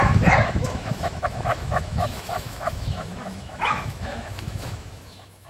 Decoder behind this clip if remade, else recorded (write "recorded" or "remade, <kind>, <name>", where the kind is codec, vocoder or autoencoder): remade, autoencoder, DAC-VAE